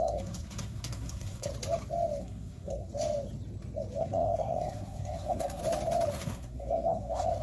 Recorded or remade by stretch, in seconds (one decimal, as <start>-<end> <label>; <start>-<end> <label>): 0.0-1.5 remade; 1.5-2.2 recorded; 2.2-2.9 remade; 2.9-4.0 recorded; 4.0-5.6 remade; 5.6-6.1 recorded; 6.1-7.4 remade